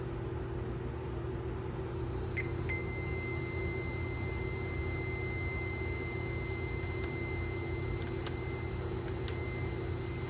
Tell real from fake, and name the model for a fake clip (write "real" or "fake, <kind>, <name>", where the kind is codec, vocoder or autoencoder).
real